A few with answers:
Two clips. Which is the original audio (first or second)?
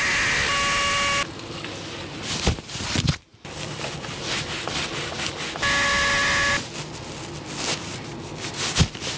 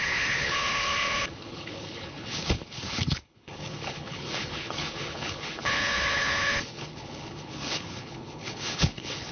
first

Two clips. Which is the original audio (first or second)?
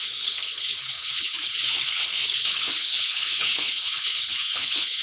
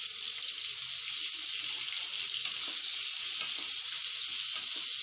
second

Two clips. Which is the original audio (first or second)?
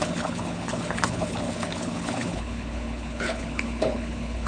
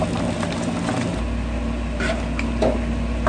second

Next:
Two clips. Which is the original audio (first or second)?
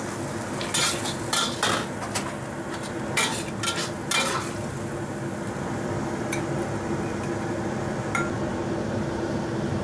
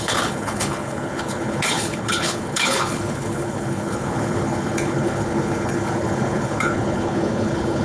first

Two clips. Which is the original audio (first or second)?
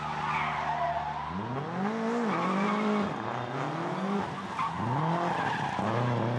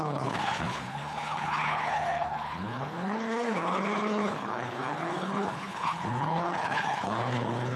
first